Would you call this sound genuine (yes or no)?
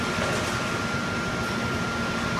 yes